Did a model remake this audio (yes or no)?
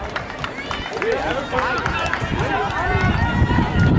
no